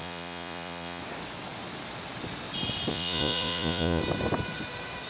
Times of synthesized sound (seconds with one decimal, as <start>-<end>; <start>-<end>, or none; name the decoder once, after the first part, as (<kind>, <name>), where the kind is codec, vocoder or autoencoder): 0.0-1.0 (vocoder, Vocos); 2.9-4.0